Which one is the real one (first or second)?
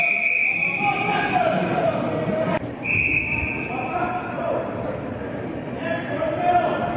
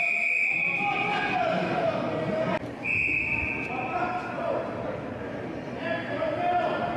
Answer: second